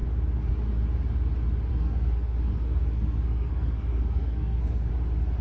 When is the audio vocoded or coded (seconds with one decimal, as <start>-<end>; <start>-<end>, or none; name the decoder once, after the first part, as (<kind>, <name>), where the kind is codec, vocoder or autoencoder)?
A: 1.7-4.9 (codec, SNAC)